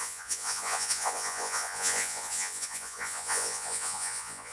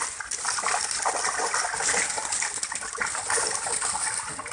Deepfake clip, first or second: first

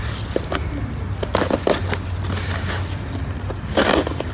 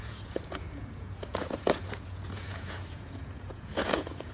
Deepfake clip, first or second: second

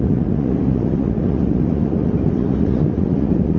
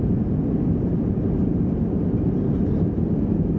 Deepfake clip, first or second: first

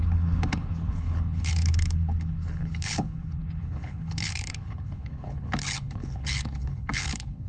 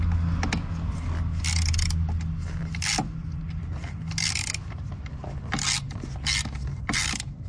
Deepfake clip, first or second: first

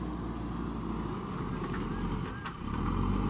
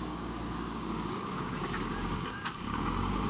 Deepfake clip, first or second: second